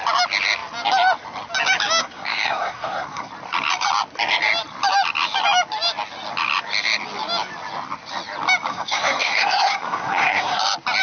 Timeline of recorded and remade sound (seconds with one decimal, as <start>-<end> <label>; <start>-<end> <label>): 0.0-2.0 recorded; 2.0-3.3 remade; 3.3-8.7 recorded; 8.7-10.6 remade; 10.6-11.0 recorded